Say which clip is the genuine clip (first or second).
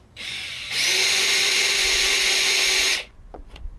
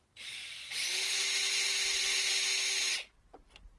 second